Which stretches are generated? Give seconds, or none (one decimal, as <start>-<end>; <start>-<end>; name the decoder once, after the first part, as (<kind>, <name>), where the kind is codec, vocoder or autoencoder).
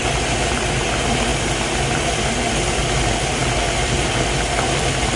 none